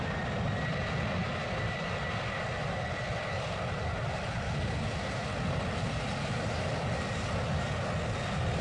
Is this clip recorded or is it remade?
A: recorded